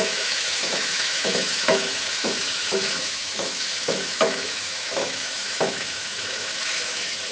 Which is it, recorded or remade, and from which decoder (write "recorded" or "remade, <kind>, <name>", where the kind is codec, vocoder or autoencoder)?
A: remade, autoencoder, DAC-VAE